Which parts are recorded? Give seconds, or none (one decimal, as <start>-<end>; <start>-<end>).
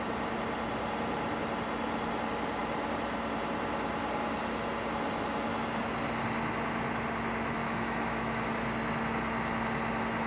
0.0-7.6; 8.5-10.3